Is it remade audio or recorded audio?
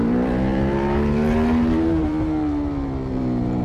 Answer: remade